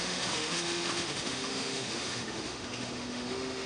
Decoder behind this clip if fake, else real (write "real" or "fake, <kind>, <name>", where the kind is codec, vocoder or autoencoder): fake, autoencoder, DAC-VAE